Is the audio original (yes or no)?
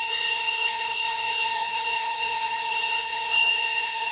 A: no